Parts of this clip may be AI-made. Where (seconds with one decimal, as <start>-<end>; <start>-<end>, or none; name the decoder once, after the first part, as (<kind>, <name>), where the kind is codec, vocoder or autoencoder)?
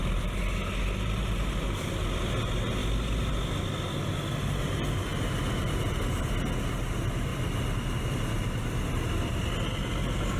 none